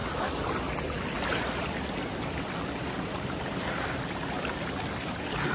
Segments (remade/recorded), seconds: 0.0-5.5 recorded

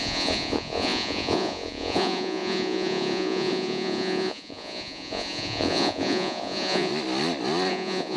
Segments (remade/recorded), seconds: 0.0-6.9 remade; 6.9-7.7 recorded; 7.7-8.2 remade

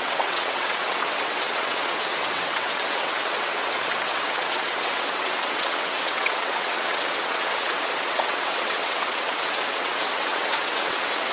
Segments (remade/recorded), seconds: 0.0-11.3 remade